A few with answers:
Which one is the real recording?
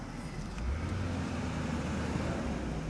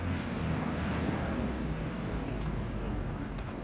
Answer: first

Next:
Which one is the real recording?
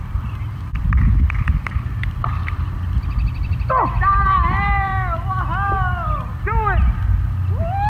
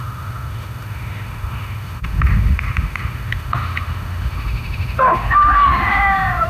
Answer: first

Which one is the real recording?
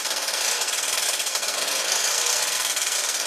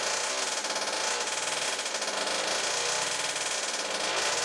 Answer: second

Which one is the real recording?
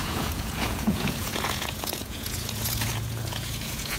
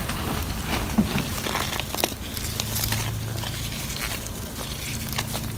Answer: second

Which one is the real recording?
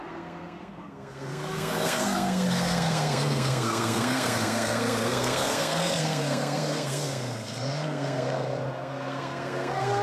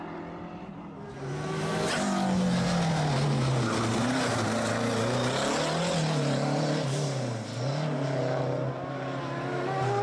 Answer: second